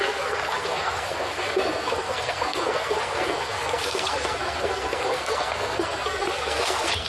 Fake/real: fake